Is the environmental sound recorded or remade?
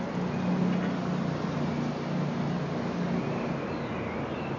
recorded